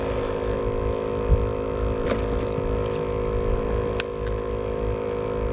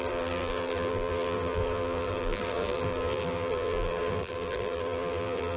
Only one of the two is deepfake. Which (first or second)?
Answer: second